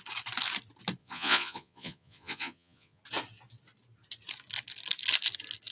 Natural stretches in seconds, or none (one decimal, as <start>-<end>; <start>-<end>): 0.0-1.0; 3.0-5.7